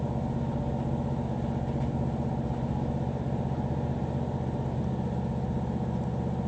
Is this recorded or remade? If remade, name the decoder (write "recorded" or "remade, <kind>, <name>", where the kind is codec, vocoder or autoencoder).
recorded